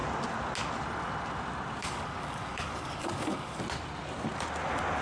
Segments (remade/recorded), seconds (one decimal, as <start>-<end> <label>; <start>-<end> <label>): 0.0-1.8 recorded; 1.8-3.6 remade; 3.6-5.0 recorded